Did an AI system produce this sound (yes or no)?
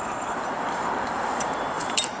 yes